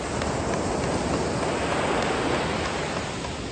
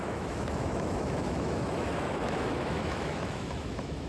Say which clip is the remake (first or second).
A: second